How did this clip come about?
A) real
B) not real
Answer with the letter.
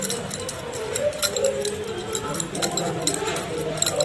A